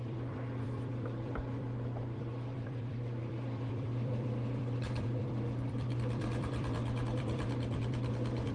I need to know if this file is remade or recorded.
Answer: remade